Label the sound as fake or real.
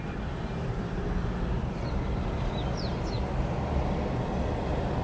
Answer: real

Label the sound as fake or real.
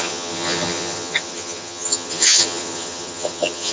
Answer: fake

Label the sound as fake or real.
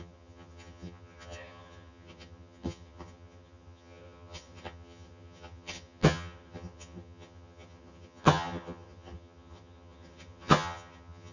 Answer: fake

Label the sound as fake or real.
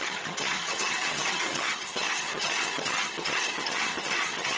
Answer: fake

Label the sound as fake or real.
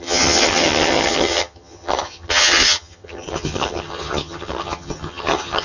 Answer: fake